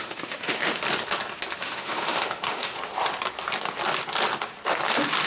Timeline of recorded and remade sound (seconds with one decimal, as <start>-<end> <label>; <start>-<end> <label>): 0.0-0.8 remade; 0.8-1.6 recorded; 1.6-2.7 remade; 2.7-5.3 recorded

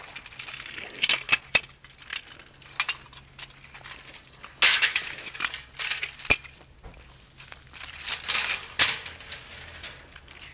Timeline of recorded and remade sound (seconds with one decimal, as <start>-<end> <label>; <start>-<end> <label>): 0.0-4.7 recorded; 4.7-5.3 remade; 5.3-10.5 recorded

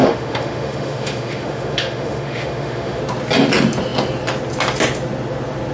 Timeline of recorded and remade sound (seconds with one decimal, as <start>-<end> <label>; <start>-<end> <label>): 0.0-3.0 remade; 3.0-5.7 recorded

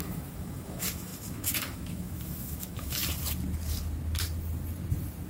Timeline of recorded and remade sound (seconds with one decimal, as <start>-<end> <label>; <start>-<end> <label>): 0.0-3.0 remade; 3.0-5.3 recorded

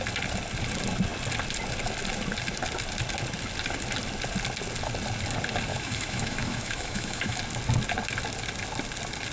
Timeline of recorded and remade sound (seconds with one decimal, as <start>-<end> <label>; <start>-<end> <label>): 0.0-5.7 recorded; 5.7-7.4 remade; 7.4-9.3 recorded

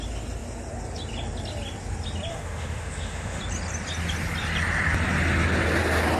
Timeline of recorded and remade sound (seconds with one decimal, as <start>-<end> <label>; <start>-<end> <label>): 0.0-2.3 recorded; 2.3-3.4 remade; 3.4-6.2 recorded

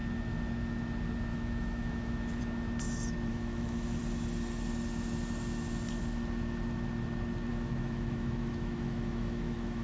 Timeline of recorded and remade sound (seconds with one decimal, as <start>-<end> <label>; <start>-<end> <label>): 0.0-1.3 recorded; 1.3-2.4 remade; 2.4-3.3 recorded; 3.3-4.0 remade; 4.0-7.5 recorded; 7.5-9.8 remade